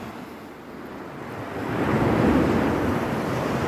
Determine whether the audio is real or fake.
real